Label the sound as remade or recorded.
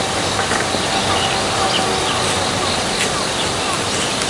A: recorded